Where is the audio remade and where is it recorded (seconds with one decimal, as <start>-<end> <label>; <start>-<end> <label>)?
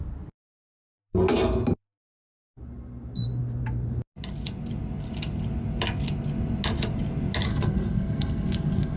0.0-7.5 recorded; 7.5-9.0 remade